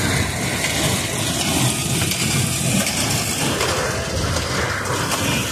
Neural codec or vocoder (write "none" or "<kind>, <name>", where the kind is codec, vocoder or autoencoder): none